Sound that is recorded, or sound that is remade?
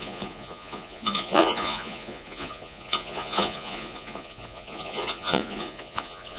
remade